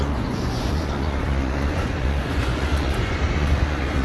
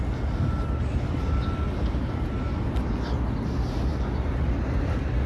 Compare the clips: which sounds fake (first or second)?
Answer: first